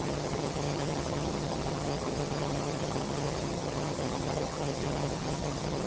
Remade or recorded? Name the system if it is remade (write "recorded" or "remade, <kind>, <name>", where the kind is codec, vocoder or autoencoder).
remade, vocoder, HiFi-GAN